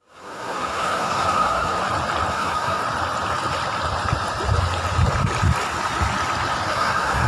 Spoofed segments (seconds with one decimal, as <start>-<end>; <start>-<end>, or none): 0.0-1.8; 2.3-2.8; 6.7-7.3

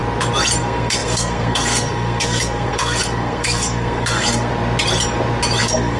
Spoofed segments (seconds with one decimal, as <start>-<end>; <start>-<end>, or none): 0.6-4.5; 5.6-6.0

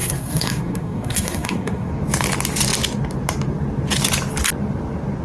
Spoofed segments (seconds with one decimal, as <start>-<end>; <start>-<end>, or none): 0.0-1.9

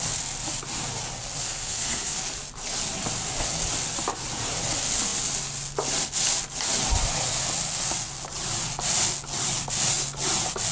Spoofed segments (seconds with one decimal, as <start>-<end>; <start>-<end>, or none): 1.4-2.2

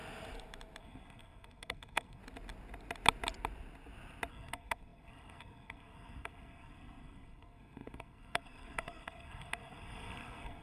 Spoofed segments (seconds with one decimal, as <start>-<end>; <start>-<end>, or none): 0.8-2.2; 4.3-10.6